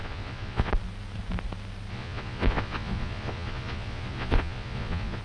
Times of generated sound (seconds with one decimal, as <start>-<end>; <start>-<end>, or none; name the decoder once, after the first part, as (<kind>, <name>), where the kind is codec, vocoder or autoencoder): 0.0-0.7 (vocoder, Vocos); 1.9-5.2